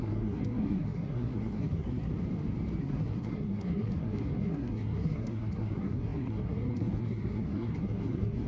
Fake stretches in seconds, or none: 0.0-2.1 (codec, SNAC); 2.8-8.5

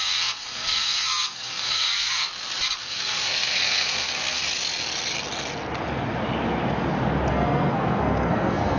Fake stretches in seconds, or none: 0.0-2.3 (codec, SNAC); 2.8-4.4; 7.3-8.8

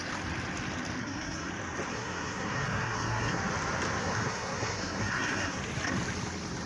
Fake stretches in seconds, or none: 1.0-1.5 (codec, SNAC); 1.9-3.4; 4.0-5.6

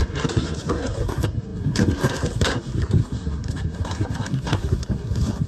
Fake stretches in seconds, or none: 0.0-5.5 (codec, SNAC)

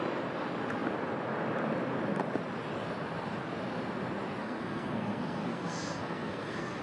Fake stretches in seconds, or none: 4.4-6.8 (codec, SNAC)

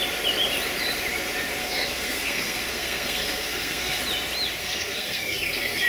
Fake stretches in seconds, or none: 1.6-4.0 (codec, SNAC); 4.6-5.9